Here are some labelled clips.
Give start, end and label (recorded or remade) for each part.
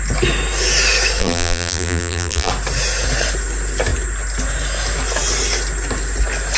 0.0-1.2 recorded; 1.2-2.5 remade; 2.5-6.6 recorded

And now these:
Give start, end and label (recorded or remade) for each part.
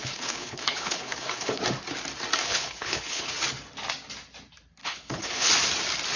0.0-1.6 remade; 1.6-2.4 recorded; 2.4-3.3 remade; 3.3-4.8 recorded; 4.8-5.5 remade; 5.5-6.2 recorded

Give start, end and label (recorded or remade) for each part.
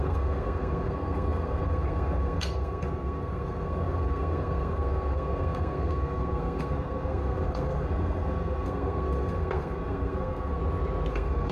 0.0-10.6 remade; 10.6-11.1 recorded; 11.1-11.5 remade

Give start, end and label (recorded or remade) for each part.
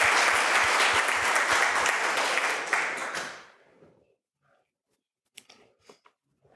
0.0-3.0 recorded; 3.0-4.0 remade; 4.0-6.6 recorded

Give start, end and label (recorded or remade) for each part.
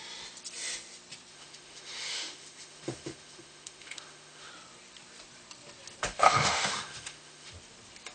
0.0-1.3 recorded; 1.3-4.5 remade; 4.5-6.0 recorded; 6.0-7.5 remade; 7.5-8.1 recorded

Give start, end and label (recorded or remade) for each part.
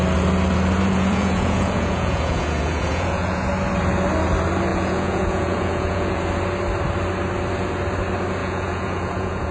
0.0-0.9 recorded; 0.9-3.5 remade; 3.5-4.7 recorded; 4.7-6.2 remade; 6.2-8.4 recorded; 8.4-9.5 remade